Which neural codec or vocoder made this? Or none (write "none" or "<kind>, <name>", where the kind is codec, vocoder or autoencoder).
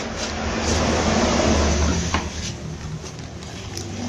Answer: none